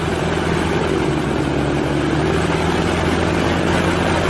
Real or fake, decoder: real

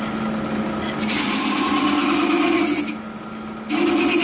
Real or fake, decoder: real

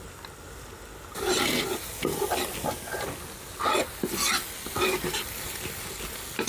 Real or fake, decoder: real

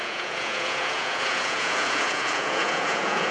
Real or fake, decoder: fake, vocoder, Vocos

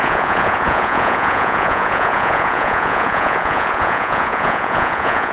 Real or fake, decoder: fake, vocoder, Vocos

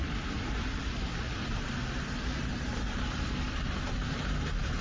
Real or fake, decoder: real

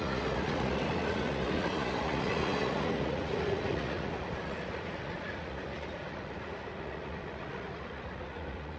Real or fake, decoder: fake, vocoder, Vocos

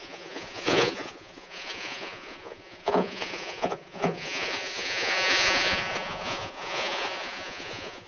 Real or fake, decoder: fake, vocoder, Vocos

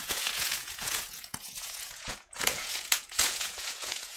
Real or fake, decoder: fake, vocoder, Vocos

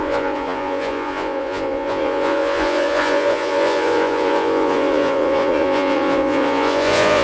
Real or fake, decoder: fake, vocoder, Vocos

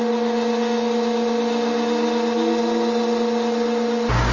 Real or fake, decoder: real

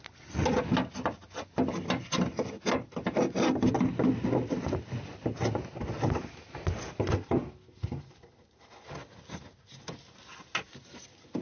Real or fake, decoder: real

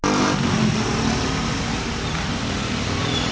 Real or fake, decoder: real